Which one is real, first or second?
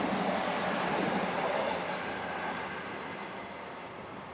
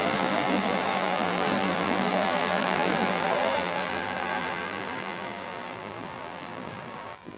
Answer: first